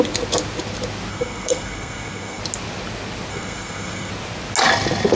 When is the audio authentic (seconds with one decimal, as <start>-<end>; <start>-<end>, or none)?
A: 0.0-1.1; 2.4-3.3; 4.1-5.2